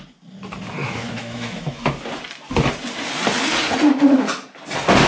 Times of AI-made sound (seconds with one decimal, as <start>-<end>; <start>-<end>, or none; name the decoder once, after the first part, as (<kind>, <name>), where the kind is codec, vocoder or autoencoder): 0.8-1.9 (autoencoder, DAC-VAE)